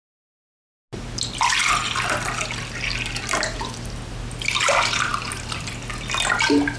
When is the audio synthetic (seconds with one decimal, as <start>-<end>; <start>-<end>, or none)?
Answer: none